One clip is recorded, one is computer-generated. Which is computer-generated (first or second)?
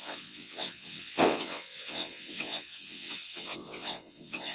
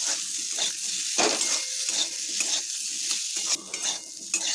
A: first